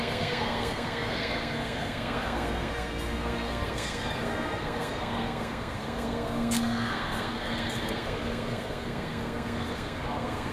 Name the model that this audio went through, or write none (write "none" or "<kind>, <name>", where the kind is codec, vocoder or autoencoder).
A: codec, SNAC